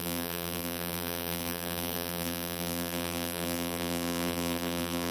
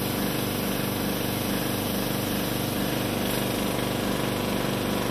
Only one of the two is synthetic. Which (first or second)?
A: first